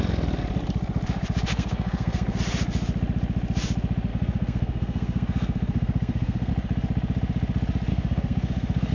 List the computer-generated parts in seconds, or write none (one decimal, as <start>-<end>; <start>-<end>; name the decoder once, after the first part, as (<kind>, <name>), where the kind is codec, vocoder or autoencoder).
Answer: 1.5-2.4 (codec, SNAC); 4.1-6.5; 7.9-8.9